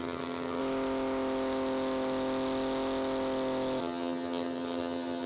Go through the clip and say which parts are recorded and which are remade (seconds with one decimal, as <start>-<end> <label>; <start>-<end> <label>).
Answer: 0.0-0.6 remade; 0.6-3.8 recorded; 3.8-5.3 remade